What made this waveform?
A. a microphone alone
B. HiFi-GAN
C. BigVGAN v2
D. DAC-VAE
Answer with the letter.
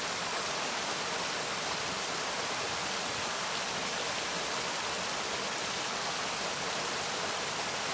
A